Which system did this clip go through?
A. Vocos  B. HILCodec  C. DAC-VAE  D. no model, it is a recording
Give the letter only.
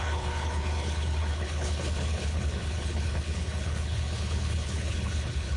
B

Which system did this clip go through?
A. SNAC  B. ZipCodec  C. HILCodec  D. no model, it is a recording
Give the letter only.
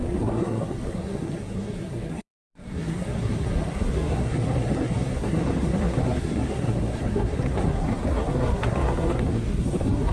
A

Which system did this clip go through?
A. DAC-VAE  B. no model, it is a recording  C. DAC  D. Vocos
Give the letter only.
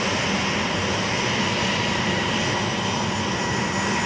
B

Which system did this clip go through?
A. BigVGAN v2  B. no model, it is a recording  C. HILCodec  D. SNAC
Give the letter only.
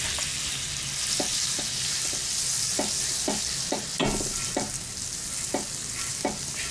B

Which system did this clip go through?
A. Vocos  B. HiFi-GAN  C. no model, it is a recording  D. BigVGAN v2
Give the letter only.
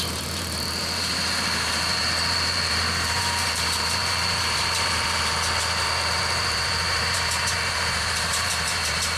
D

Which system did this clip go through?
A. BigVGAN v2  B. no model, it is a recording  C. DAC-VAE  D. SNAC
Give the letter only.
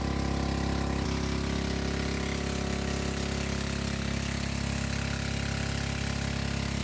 B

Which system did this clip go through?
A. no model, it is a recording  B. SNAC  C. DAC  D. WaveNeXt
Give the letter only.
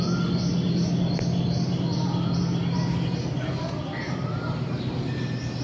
A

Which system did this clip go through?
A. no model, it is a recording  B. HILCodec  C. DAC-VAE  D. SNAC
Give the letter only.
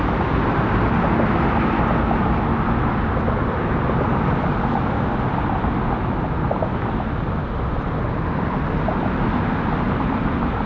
A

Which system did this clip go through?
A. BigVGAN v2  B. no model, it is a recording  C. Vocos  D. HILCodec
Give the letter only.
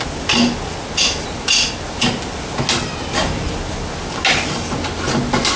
B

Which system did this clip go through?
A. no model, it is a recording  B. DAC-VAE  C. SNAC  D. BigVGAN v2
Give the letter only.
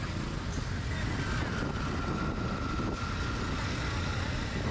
A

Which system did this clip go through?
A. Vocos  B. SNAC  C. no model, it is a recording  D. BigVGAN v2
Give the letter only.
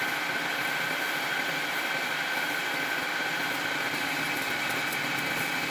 C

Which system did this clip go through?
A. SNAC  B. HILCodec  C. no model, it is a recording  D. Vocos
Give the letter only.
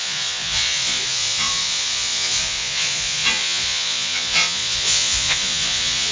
D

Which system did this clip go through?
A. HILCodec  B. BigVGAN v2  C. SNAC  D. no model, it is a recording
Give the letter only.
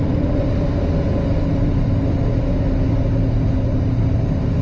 D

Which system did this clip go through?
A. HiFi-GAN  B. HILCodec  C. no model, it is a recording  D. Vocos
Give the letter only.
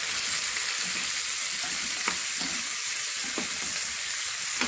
C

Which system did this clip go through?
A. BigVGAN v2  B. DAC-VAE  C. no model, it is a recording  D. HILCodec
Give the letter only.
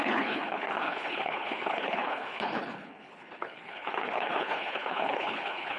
D